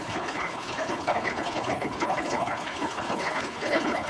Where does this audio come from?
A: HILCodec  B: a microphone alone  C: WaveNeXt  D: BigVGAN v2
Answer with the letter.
A